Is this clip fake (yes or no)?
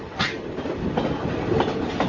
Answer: no